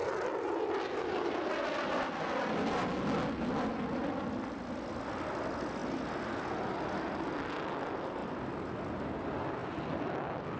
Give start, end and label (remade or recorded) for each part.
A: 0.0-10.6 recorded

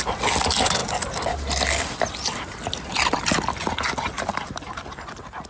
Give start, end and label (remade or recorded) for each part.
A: 0.0-5.5 recorded

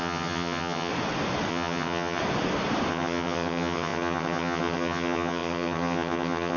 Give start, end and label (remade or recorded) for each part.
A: 0.0-0.9 remade; 0.9-1.5 recorded; 1.5-2.2 remade; 2.2-2.9 recorded; 2.9-6.6 remade